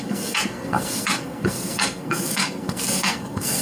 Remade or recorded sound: remade